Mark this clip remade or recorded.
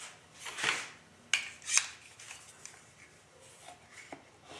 recorded